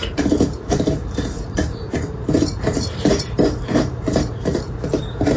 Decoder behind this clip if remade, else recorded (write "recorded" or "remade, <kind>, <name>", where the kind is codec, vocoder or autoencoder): remade, vocoder, BigVGAN v2